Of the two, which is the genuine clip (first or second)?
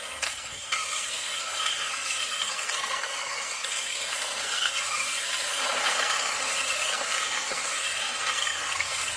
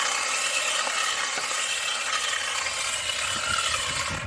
second